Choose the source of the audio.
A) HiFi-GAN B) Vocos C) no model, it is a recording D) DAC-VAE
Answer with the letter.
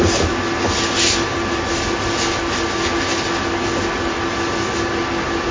C